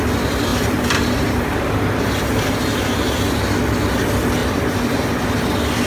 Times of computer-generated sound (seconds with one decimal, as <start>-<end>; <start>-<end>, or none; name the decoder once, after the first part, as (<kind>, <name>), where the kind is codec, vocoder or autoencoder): 0.5-3.4 (vocoder, BigVGAN v2); 4.4-5.2